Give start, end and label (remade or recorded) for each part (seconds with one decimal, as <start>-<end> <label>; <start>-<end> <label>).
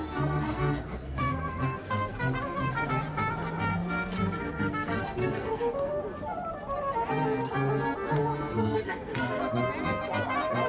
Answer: 0.0-2.9 remade; 2.9-3.7 recorded; 3.7-6.0 remade; 6.0-8.2 recorded; 8.2-9.4 remade; 9.4-10.7 recorded